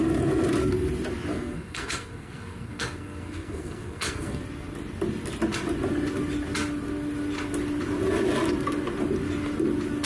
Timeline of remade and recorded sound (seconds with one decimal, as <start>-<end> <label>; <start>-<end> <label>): 0.0-1.3 recorded; 1.3-4.4 remade; 4.4-10.1 recorded